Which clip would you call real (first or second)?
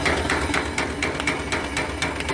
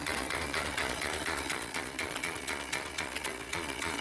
first